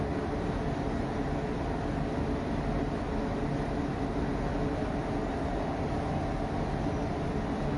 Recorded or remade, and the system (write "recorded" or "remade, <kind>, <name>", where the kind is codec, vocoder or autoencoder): recorded